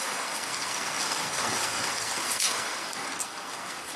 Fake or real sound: fake